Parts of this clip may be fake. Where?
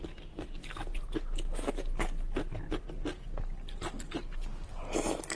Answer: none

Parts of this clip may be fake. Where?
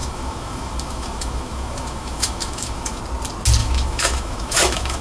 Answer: 0.0-3.0 (autoencoder, DAC-VAE); 3.6-5.0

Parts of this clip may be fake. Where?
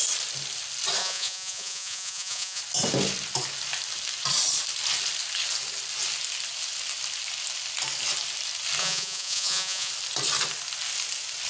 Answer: 1.0-2.6 (vocoder, Vocos); 8.8-9.9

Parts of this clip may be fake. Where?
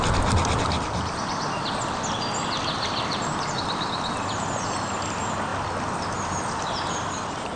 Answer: none